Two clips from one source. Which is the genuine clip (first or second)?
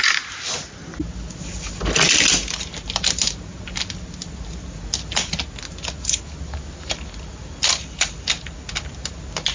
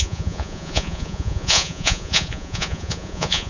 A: first